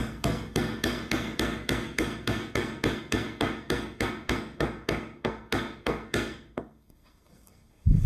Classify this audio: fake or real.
fake